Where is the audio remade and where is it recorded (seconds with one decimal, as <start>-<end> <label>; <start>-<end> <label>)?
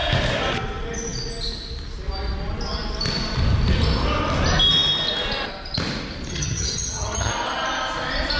0.0-6.3 recorded; 6.3-7.3 remade; 7.3-8.4 recorded